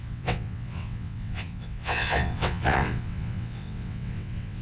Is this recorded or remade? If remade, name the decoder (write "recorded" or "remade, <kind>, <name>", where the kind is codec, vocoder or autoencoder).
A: remade, vocoder, WaveNeXt